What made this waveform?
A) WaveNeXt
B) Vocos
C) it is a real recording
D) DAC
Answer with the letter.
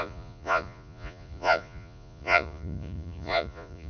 B